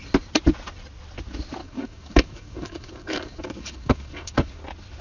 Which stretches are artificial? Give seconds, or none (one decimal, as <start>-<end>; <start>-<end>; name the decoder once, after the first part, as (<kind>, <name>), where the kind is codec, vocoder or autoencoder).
1.6-4.6 (codec, DAC)

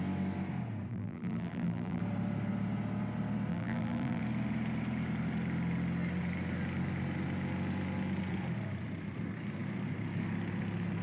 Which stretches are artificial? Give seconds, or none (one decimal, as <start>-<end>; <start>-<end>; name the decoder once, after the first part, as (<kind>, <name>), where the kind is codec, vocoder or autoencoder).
0.9-2.0 (vocoder, BigVGAN v2); 3.5-4.2

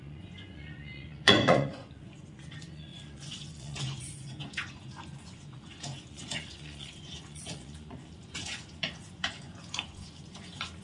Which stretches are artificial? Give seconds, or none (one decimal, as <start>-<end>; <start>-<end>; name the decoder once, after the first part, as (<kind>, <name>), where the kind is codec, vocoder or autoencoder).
0.0-10.8 (vocoder, Vocos)

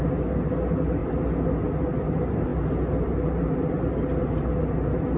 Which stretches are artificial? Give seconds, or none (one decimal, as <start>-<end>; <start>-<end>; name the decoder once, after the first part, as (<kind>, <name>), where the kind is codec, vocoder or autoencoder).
none